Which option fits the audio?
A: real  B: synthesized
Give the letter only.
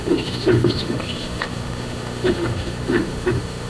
B